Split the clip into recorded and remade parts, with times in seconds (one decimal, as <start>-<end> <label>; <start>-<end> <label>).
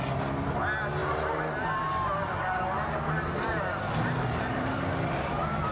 0.0-3.5 recorded; 3.5-4.7 remade; 4.7-5.7 recorded